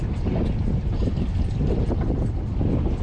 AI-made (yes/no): no